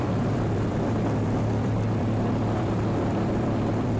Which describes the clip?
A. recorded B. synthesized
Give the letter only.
B